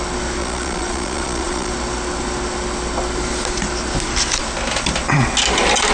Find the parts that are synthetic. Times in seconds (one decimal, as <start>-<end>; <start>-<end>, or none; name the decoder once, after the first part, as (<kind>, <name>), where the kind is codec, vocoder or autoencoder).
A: 0.4-1.7 (vocoder, Vocos)